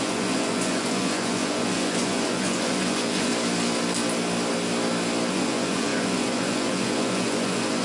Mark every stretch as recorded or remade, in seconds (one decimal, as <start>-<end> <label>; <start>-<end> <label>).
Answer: 0.0-3.3 remade; 3.3-5.3 recorded; 5.3-7.8 remade